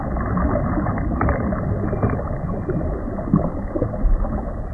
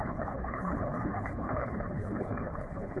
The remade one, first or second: second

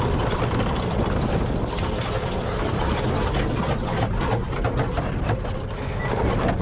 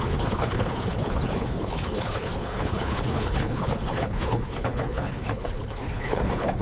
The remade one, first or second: second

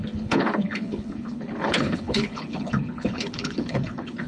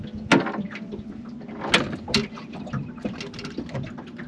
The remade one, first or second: first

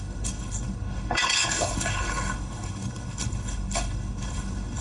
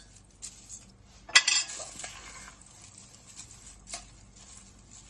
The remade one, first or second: first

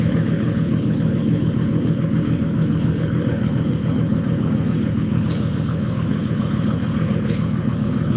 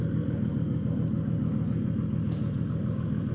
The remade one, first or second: first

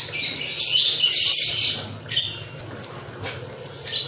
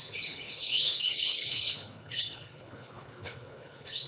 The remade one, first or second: second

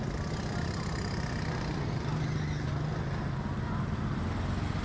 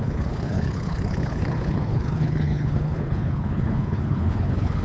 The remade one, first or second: second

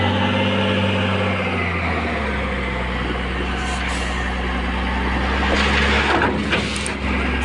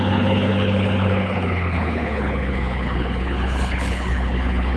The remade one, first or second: second